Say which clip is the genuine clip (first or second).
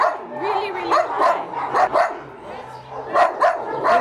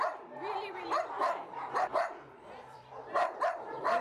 first